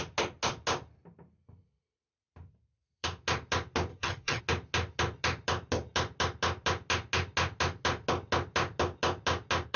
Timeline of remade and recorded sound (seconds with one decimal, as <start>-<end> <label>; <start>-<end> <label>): 0.0-3.9 recorded; 3.9-4.4 remade; 4.4-9.8 recorded